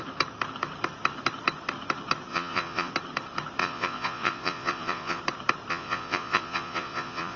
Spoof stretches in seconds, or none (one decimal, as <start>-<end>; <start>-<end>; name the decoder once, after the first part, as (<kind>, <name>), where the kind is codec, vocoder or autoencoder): 2.3-2.9 (vocoder, Vocos); 3.6-5.2; 5.7-7.4